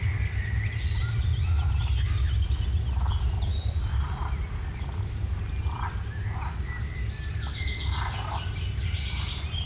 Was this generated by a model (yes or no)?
no